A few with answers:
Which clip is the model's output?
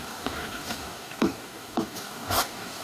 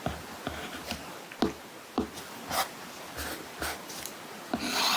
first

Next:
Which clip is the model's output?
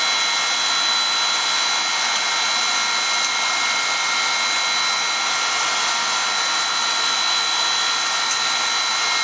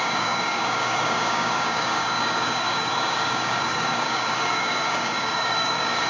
second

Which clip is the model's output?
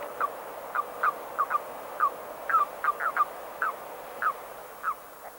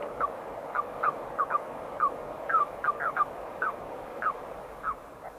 second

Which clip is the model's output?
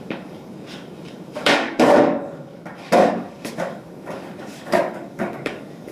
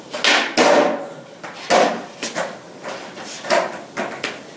first